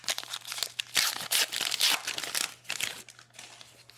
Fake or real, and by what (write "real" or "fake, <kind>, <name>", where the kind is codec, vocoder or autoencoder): real